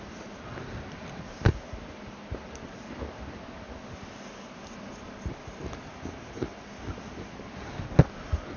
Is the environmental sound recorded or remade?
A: recorded